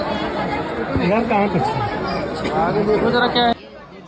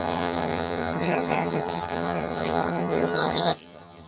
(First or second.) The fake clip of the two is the second